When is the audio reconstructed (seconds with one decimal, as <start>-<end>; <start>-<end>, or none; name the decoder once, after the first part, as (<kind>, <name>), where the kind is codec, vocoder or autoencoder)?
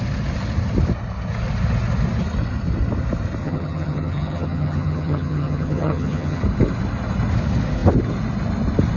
3.4-6.4 (vocoder, HiFi-GAN)